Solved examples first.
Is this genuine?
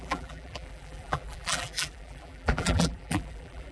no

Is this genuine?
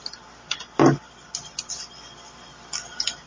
yes